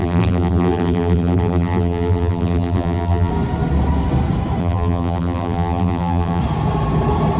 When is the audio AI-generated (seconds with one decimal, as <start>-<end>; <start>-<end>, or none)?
0.0-3.3; 4.6-6.4